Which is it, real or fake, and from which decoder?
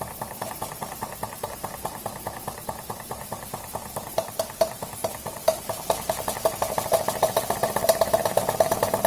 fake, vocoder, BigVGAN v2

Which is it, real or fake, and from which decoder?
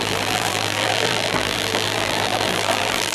fake, vocoder, BigVGAN v2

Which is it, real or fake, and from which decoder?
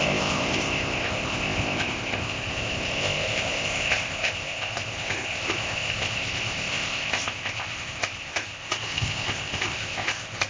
fake, codec, ZipCodec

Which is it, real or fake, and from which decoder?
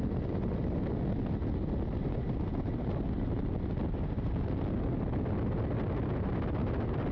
real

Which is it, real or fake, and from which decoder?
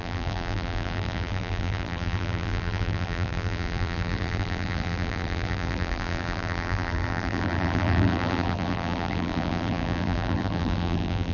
fake, vocoder, BigVGAN v2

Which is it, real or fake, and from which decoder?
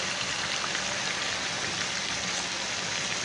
real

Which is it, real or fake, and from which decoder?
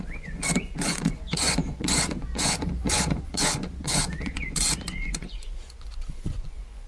fake, vocoder, Vocos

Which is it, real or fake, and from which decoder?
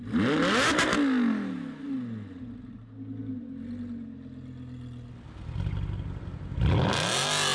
real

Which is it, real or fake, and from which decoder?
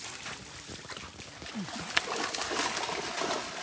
real